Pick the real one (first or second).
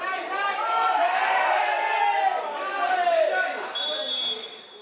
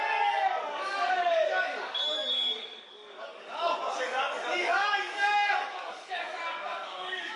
first